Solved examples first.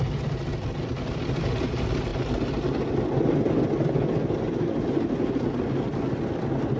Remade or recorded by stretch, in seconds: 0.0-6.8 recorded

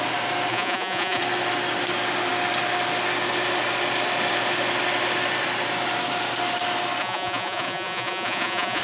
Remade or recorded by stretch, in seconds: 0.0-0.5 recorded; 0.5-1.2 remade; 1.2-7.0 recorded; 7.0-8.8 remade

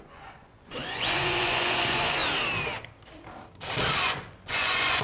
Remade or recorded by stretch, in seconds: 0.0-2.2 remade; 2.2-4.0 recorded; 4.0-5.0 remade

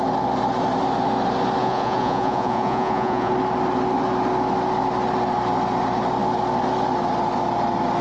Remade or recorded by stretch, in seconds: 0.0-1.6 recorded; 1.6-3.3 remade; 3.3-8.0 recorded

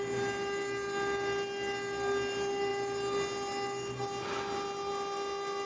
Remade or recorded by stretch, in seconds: 0.0-5.7 recorded

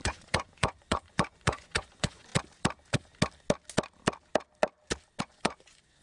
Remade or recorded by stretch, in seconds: 0.0-2.3 remade; 2.3-5.2 recorded; 5.2-6.0 remade